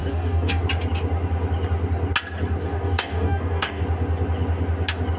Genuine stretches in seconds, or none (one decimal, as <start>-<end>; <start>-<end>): 0.6-2.6; 3.8-5.2